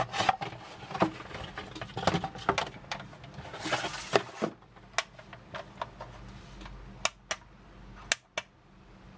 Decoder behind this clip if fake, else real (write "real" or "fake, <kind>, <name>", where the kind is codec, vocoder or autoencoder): real